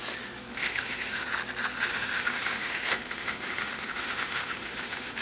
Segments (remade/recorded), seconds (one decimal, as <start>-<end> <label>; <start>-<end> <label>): 0.0-0.5 recorded; 0.5-1.3 remade; 1.3-1.9 recorded; 1.9-5.2 remade